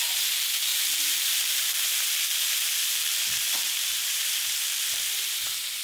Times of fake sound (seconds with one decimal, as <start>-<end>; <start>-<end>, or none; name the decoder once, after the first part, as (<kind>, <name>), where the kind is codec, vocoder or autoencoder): 0.7-4.0 (vocoder, BigVGAN v2)